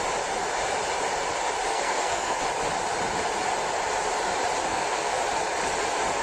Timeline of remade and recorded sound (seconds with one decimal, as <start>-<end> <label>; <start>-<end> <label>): 0.0-1.7 recorded; 1.7-2.4 remade; 2.4-4.7 recorded; 4.7-5.2 remade; 5.2-6.2 recorded